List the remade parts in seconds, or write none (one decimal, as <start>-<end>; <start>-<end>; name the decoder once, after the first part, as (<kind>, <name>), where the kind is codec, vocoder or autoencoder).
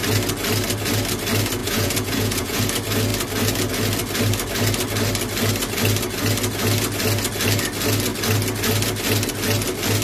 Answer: 1.6-2.6 (vocoder, Vocos)